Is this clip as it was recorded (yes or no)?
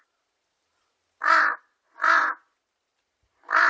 no